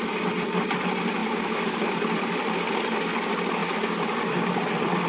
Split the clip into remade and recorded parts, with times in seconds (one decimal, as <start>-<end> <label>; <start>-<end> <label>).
0.0-1.2 recorded; 1.2-2.7 remade; 2.7-5.1 recorded